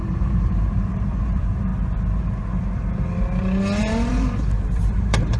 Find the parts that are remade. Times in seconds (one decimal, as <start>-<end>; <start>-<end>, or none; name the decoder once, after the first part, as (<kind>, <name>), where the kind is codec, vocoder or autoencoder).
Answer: 0.0-1.7 (vocoder, BigVGAN v2); 3.8-5.4